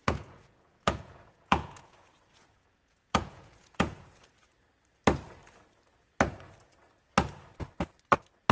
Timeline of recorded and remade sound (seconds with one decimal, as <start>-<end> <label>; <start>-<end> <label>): 0.0-4.3 remade; 4.3-8.5 recorded